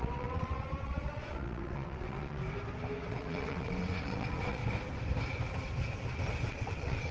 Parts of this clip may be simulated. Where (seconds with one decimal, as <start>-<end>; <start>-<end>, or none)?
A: 0.0-2.4; 3.1-4.6; 6.5-7.1